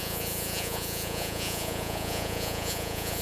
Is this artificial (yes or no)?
yes